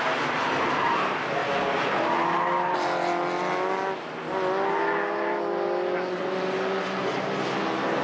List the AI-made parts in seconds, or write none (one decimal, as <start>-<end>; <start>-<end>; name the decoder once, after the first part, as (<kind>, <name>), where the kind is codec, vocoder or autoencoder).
none